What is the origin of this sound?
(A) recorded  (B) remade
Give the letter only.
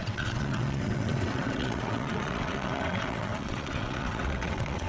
B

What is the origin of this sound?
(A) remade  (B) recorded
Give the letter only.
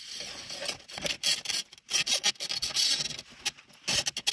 B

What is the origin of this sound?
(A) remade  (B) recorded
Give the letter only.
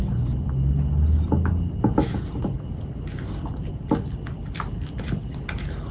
B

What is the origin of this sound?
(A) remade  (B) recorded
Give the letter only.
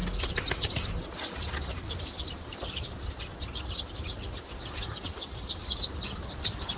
B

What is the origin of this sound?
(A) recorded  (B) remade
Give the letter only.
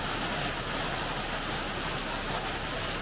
A